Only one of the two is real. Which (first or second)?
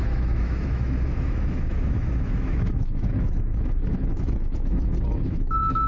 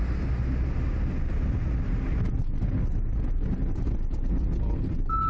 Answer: second